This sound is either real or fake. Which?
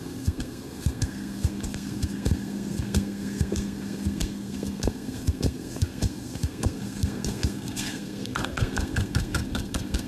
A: fake